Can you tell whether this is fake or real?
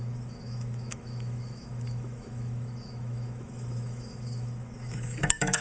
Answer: fake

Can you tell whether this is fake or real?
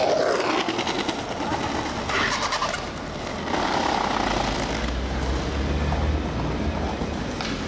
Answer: real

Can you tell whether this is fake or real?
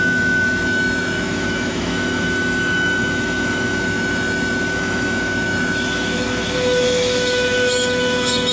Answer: fake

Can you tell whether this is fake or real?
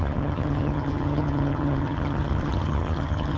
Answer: fake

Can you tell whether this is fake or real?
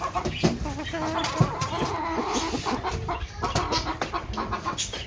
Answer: real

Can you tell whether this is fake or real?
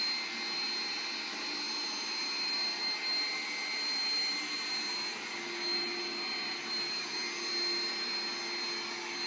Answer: real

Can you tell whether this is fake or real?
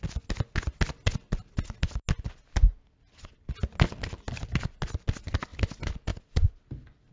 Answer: real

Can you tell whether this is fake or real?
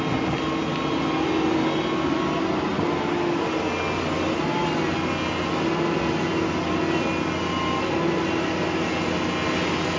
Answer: real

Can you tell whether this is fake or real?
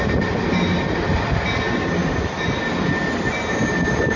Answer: real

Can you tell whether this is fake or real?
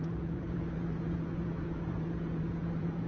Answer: fake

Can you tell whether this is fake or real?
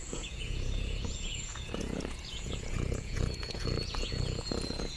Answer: fake